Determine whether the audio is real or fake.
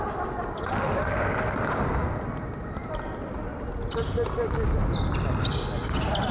real